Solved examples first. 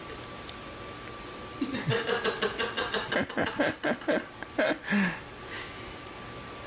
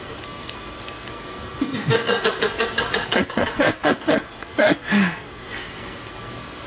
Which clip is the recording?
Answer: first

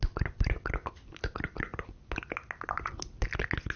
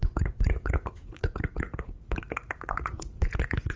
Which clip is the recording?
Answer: first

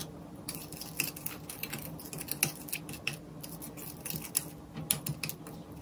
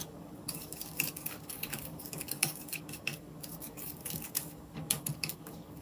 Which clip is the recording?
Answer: first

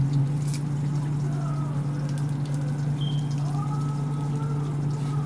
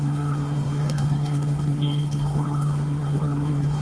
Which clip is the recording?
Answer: first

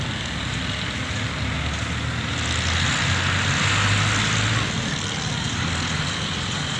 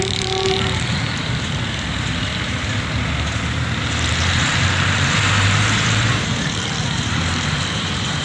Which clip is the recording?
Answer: first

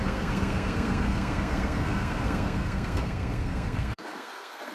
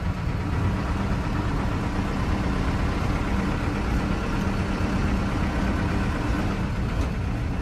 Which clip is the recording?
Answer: second